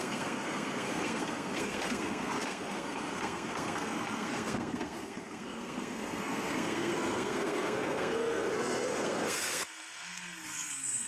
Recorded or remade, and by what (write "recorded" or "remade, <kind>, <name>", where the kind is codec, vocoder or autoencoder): remade, codec, SNAC